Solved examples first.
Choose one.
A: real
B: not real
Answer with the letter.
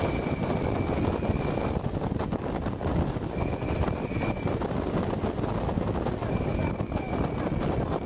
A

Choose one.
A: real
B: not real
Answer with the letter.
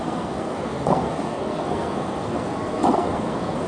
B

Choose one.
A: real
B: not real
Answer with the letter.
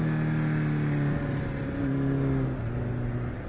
A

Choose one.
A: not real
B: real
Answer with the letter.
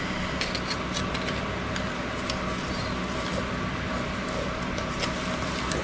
B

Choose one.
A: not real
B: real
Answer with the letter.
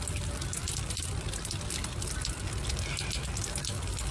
B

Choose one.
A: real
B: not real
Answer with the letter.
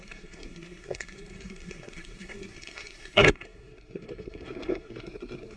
B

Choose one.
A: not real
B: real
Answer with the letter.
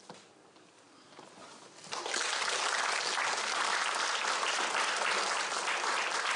B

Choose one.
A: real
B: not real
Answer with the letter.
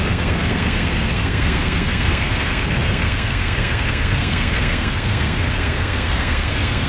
B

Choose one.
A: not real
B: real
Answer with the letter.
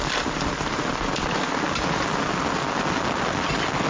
B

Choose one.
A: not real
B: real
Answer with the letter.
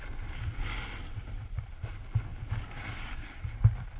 B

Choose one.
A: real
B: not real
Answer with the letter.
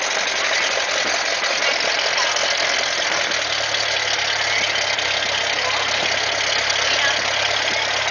A